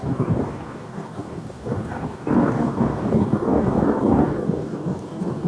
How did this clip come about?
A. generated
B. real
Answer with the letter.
A